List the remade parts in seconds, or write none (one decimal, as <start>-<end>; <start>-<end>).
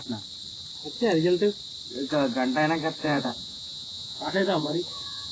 3.0-5.3